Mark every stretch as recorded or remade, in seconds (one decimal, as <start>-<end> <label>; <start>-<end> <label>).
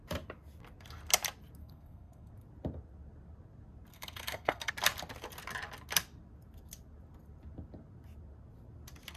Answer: 0.0-1.6 recorded; 1.6-2.3 remade; 2.3-3.9 recorded; 3.9-4.7 remade; 4.7-9.2 recorded